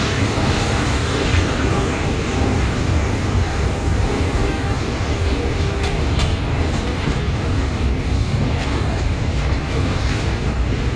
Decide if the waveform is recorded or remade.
remade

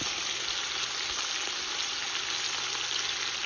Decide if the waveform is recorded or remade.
recorded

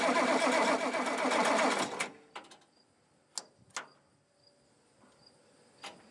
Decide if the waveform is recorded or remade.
recorded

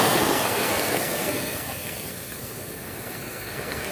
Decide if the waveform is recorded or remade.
remade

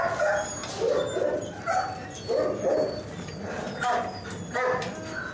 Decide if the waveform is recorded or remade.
recorded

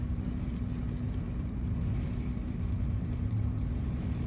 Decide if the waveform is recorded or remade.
remade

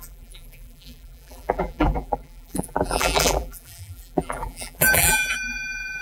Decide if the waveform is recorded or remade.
remade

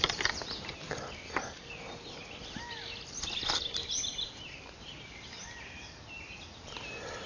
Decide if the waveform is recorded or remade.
recorded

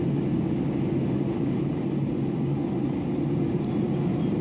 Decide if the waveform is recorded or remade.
recorded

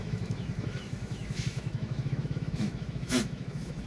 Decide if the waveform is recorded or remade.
remade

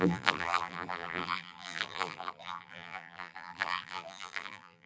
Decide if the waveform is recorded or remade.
remade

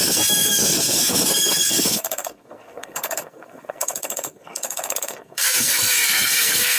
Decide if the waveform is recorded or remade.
remade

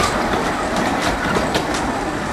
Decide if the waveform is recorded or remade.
recorded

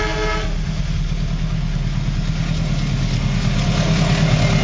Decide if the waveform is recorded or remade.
recorded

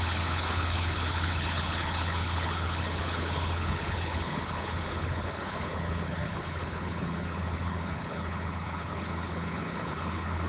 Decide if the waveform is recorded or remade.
remade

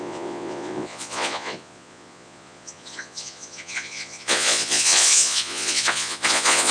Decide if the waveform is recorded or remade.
remade